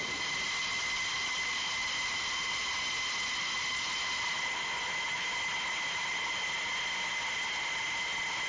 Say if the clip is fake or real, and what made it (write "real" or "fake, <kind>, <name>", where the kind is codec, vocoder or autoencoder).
real